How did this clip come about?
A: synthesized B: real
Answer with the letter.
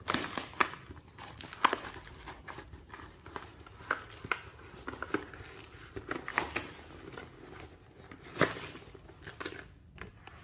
B